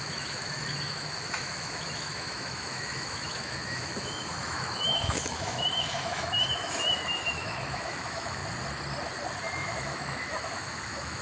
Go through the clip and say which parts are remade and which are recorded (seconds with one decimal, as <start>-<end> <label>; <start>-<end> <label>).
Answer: 0.0-8.4 remade; 8.4-9.5 recorded; 9.5-11.2 remade